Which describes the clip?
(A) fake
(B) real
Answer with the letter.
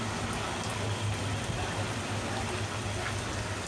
B